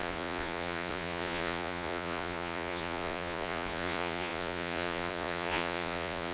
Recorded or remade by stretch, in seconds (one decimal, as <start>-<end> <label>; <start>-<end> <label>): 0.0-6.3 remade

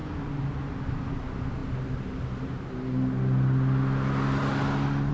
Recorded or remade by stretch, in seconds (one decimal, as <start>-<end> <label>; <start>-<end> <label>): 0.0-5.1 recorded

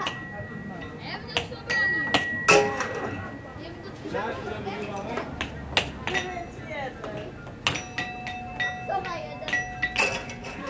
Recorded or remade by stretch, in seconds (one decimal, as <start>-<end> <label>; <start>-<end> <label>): 0.0-3.5 recorded; 3.5-5.3 remade; 5.3-10.7 recorded

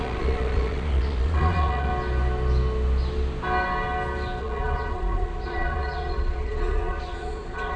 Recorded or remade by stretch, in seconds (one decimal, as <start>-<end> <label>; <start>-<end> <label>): 0.0-1.9 remade; 1.9-4.4 recorded; 4.4-7.8 remade

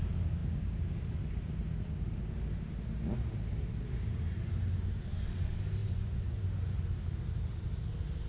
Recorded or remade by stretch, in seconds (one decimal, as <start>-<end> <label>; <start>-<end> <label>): 0.0-5.8 recorded; 5.8-6.4 remade; 6.4-8.3 recorded

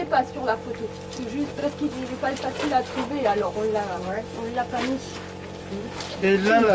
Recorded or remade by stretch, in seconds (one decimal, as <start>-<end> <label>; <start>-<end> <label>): 0.0-6.7 recorded

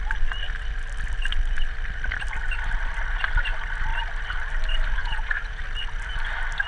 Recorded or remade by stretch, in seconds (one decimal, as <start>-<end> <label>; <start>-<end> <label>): 0.0-5.0 recorded; 5.0-5.6 remade; 5.6-6.7 recorded

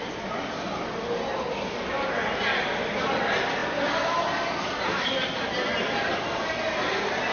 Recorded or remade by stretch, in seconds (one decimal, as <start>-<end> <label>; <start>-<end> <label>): 0.0-7.3 recorded